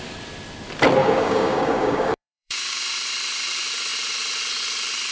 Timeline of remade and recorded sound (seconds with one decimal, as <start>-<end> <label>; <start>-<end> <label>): 0.0-1.0 recorded; 1.0-2.8 remade; 2.8-5.1 recorded